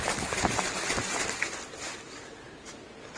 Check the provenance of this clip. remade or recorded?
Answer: recorded